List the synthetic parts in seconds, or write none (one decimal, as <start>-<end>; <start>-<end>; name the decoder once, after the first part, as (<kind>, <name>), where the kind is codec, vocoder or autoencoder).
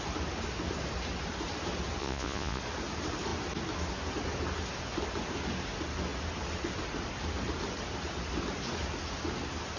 2.0-2.6 (vocoder, Vocos)